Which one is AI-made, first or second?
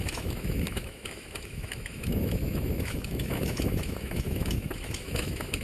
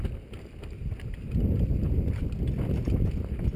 first